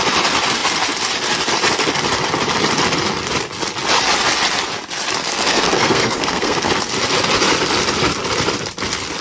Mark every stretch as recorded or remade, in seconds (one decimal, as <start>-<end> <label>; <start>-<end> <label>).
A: 0.0-5.2 recorded; 5.2-6.7 remade; 6.7-9.2 recorded